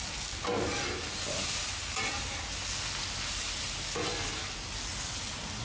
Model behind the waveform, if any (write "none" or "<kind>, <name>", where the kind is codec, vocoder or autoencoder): none